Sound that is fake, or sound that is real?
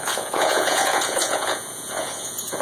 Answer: fake